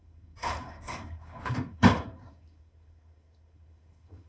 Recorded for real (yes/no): no